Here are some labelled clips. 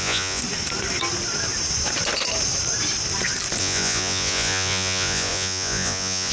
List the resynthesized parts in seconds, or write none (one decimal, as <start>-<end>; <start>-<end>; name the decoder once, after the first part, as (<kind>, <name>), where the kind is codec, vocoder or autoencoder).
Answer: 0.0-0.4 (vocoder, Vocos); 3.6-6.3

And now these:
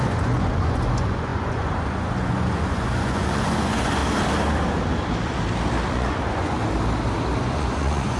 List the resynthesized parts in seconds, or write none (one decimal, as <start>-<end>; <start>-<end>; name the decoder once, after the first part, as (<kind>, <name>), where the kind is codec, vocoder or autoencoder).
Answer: 0.0-4.0 (vocoder, Vocos); 5.9-6.6; 7.4-8.2

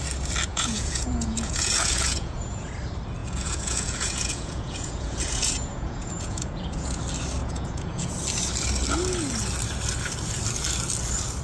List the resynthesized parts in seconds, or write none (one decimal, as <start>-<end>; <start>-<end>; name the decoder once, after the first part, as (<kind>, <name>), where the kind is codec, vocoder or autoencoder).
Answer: 0.5-2.7 (vocoder, Vocos); 3.2-7.0; 7.4-8.1

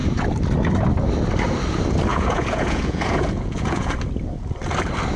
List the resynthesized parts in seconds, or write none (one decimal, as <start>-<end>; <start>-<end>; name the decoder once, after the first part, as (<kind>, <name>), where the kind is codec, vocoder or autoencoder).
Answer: 2.1-3.9 (vocoder, Vocos)

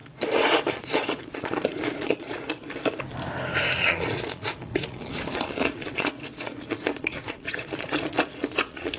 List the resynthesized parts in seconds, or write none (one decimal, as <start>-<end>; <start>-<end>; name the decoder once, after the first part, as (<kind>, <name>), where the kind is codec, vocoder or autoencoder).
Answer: 0.0-2.5 (vocoder, Vocos); 3.8-9.0

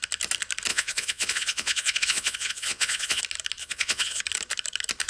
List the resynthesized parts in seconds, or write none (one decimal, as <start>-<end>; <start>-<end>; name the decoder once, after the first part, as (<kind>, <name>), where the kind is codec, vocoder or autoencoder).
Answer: 0.7-3.2 (vocoder, Vocos); 3.6-4.2